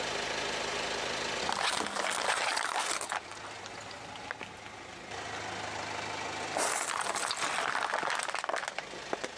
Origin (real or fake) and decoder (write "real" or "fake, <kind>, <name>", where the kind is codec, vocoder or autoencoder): real